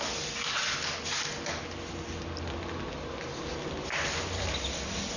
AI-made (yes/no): no